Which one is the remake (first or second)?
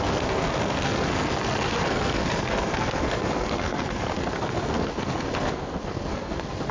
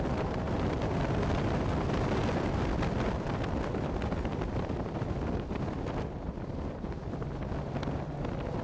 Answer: first